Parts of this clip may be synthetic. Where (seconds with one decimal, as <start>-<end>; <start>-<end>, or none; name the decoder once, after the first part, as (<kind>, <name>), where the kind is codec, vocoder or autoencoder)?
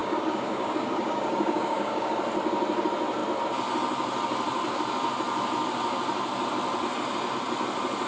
0.0-2.2 (codec, DAC)